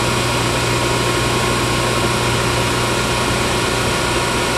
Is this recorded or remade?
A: recorded